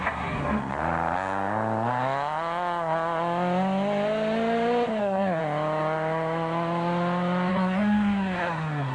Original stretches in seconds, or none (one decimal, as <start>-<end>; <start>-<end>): 0.7-5.0; 5.4-7.5